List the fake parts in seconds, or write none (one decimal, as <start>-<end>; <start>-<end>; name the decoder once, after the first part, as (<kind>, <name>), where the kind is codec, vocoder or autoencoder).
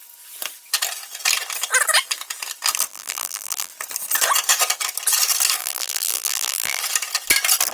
2.9-3.7 (vocoder, BigVGAN v2); 5.6-6.8